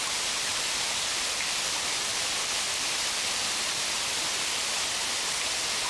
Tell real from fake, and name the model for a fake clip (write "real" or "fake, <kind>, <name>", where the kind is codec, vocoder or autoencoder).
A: real